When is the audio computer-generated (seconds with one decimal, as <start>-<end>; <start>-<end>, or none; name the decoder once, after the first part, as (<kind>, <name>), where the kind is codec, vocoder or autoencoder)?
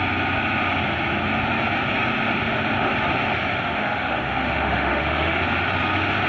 3.5-5.4 (autoencoder, DAC-VAE)